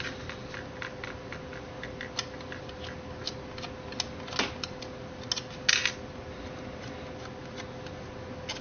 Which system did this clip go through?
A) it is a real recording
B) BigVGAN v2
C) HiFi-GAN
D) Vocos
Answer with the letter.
A